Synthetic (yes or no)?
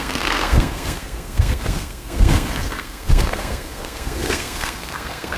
yes